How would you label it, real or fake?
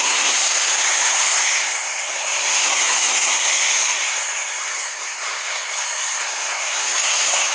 fake